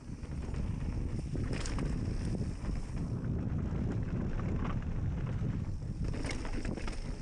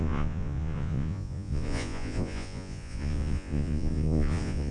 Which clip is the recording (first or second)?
first